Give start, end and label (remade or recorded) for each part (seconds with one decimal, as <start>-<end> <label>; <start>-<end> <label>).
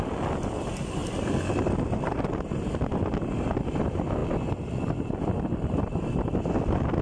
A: 0.0-7.0 recorded